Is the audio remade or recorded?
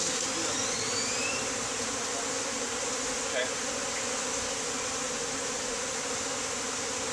recorded